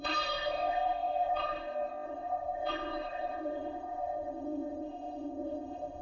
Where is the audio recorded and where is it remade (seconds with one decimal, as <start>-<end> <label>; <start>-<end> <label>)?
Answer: 0.0-6.0 remade